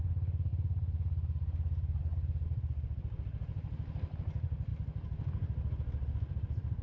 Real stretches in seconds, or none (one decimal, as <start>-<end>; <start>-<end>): 0.0-6.8